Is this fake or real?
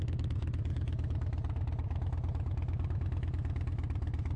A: real